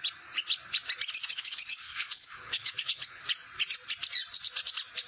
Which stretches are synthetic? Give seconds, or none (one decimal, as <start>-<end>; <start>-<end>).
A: 1.3-3.2